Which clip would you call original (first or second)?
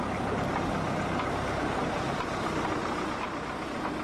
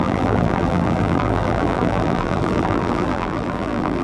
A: first